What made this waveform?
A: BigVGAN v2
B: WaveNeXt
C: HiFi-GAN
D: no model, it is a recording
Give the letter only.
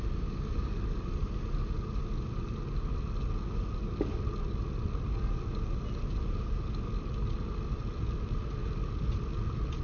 D